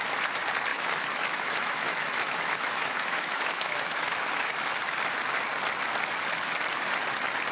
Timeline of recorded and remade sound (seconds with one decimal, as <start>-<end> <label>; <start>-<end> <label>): 0.0-0.7 recorded; 0.7-4.8 remade; 4.8-7.5 recorded